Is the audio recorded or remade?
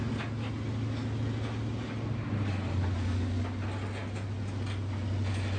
recorded